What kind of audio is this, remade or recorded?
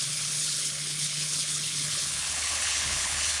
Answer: remade